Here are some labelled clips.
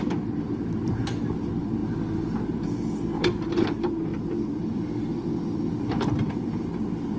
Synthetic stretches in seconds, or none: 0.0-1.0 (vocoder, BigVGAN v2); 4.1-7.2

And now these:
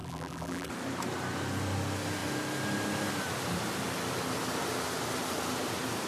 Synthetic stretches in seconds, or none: 0.0-0.7 (vocoder, BigVGAN v2)

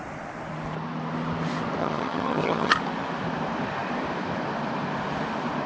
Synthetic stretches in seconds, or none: 1.8-2.7 (vocoder, HiFi-GAN)

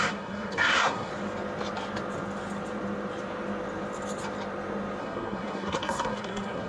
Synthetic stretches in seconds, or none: 0.0-1.1 (codec, SNAC); 5.0-6.7

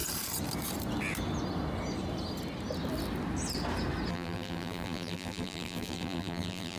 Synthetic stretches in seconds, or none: 4.1-6.8 (vocoder, BigVGAN v2)